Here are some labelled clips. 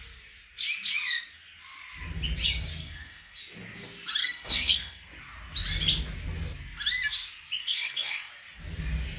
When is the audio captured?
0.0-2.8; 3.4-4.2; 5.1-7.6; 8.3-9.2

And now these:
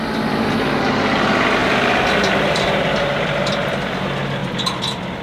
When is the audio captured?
0.0-1.6; 2.8-5.2

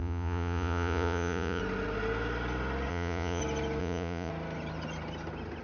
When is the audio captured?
1.6-2.9; 3.4-3.8; 4.3-5.6